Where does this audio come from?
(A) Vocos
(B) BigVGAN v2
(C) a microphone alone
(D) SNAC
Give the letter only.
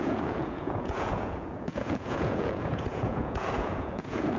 A